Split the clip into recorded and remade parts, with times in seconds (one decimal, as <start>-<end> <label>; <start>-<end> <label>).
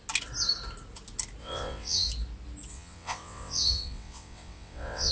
0.0-1.4 recorded; 1.4-2.1 remade; 2.1-2.7 recorded; 2.7-5.1 remade